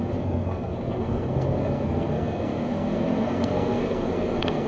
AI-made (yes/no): yes